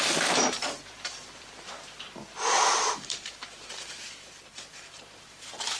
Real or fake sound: fake